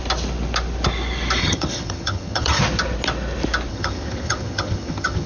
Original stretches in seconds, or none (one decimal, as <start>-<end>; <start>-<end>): 0.0-1.4; 2.6-3.7